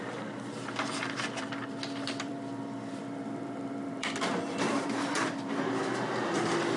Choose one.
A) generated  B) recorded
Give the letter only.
A